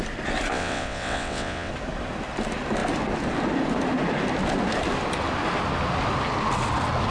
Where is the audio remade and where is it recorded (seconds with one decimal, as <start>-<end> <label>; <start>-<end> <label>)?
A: 0.0-0.5 recorded; 0.5-1.7 remade; 1.7-7.1 recorded